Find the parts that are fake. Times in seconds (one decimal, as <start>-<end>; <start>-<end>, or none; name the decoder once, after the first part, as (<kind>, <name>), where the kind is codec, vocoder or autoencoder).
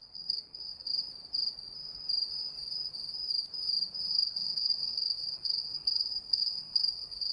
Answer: 0.0-0.9 (codec, SNAC); 4.1-7.3